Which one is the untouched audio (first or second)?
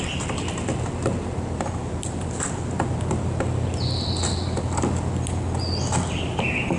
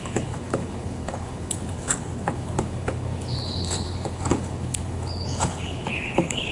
first